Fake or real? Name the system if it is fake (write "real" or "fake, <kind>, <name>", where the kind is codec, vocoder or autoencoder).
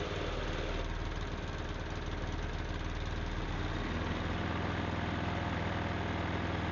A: real